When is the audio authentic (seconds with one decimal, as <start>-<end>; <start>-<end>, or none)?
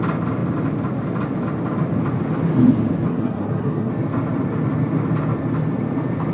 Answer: 0.0-3.1; 3.9-6.3